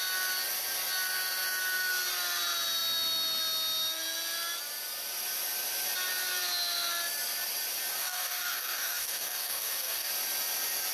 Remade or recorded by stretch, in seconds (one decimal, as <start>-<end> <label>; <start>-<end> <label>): 0.0-8.0 recorded; 8.0-10.1 remade; 10.1-10.9 recorded